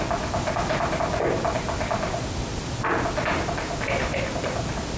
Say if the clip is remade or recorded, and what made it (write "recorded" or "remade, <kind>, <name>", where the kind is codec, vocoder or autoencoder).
recorded